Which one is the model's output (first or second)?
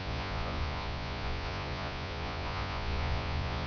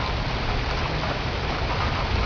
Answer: first